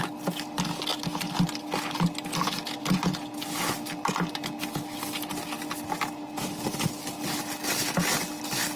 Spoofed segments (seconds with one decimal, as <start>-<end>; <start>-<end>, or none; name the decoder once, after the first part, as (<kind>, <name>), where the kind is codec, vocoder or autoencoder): none